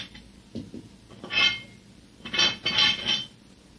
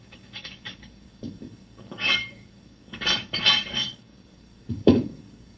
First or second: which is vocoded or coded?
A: second